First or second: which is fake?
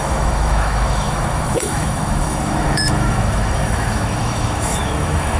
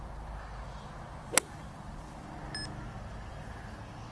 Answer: first